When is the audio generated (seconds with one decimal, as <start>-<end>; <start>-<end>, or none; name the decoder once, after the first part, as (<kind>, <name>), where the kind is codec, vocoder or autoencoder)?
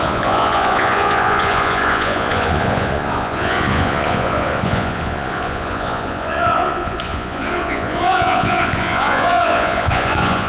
0.0-10.5 (vocoder, Vocos)